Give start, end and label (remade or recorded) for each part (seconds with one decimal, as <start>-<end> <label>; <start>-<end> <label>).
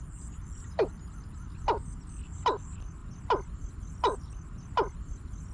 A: 0.0-5.5 recorded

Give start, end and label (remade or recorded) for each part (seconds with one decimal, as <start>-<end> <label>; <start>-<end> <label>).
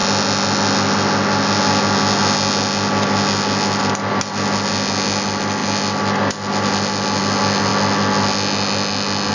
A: 0.0-9.3 recorded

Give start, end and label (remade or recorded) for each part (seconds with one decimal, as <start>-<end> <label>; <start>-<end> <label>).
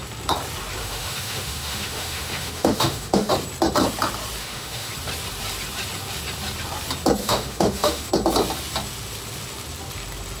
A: 0.0-0.8 recorded; 0.8-3.3 remade; 3.3-4.4 recorded; 4.4-4.9 remade; 4.9-7.2 recorded; 7.2-8.1 remade; 8.1-10.4 recorded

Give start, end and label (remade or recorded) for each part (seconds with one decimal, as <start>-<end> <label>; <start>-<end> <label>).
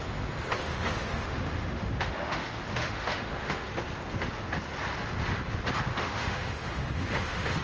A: 0.0-0.6 recorded; 0.6-3.7 remade; 3.7-6.0 recorded; 6.0-7.6 remade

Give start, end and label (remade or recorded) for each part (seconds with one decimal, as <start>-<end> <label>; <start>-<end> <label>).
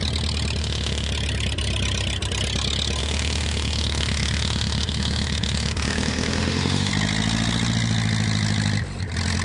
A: 0.0-0.6 recorded; 0.6-1.1 remade; 1.1-3.0 recorded; 3.0-6.9 remade; 6.9-9.4 recorded